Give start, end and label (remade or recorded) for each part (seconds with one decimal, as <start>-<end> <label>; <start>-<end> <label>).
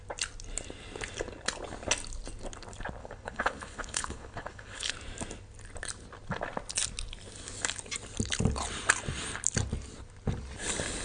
0.0-3.0 recorded; 3.0-4.9 remade; 4.9-11.0 recorded